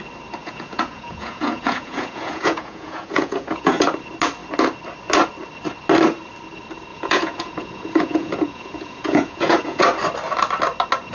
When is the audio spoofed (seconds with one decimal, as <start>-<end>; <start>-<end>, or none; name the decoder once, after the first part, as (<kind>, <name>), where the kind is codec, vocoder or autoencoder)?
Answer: 0.4-3.9 (vocoder, Vocos); 6.9-9.8

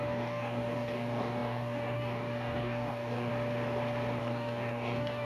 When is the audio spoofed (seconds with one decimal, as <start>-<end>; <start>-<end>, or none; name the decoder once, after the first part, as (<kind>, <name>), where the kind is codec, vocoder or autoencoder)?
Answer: 0.0-3.3 (codec, DAC); 4.2-5.2

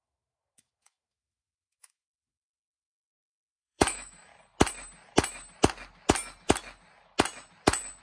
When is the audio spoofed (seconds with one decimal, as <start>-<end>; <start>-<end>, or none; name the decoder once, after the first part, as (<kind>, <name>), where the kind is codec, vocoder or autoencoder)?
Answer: 0.0-4.3 (autoencoder, DAC-VAE)

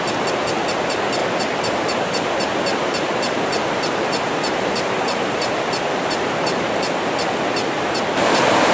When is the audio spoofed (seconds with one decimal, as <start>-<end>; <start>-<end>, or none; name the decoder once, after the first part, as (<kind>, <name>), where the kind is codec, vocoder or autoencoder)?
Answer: 1.2-5.6 (vocoder, BigVGAN v2)

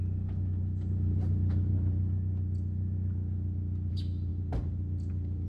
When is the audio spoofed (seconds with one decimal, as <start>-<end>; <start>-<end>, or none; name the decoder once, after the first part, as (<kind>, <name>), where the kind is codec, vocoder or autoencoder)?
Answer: 0.0-1.7 (vocoder, BigVGAN v2); 3.9-5.5

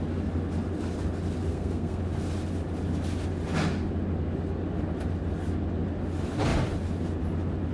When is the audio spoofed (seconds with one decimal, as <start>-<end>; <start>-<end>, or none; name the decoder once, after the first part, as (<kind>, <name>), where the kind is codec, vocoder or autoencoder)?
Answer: 1.5-2.0 (codec, SNAC)

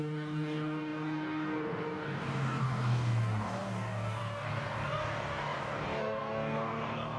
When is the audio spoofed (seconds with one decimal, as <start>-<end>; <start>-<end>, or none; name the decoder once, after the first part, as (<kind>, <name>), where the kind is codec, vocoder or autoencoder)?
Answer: 0.0-7.2 (codec, DAC)